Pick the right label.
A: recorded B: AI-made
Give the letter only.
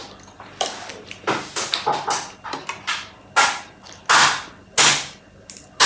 A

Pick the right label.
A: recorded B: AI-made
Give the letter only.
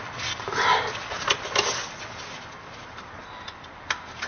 A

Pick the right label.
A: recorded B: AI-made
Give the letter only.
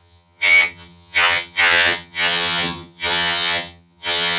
B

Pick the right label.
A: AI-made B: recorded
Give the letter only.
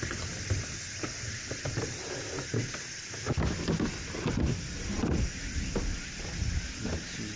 B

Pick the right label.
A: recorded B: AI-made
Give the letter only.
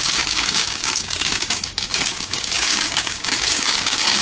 B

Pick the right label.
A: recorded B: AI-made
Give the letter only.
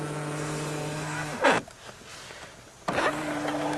A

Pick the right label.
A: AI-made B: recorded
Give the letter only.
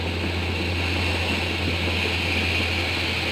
B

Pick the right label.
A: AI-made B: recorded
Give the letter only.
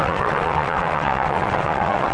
A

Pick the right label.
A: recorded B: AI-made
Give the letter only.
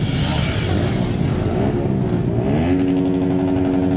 A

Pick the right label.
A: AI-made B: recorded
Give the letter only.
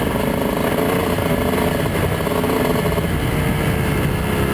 B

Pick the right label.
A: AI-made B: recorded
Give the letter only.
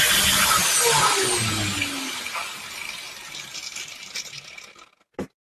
B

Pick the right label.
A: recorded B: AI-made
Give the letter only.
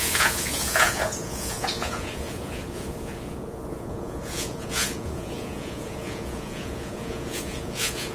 B